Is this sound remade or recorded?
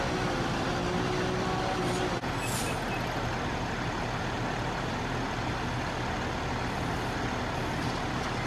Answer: recorded